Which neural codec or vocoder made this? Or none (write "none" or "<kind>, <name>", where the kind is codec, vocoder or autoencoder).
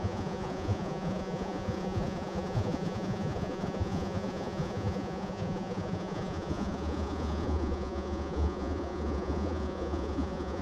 vocoder, Vocos